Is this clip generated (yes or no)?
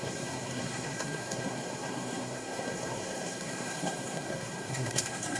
yes